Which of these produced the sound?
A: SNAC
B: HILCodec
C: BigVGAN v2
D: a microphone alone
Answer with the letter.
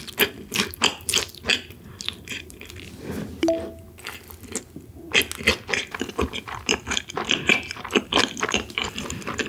D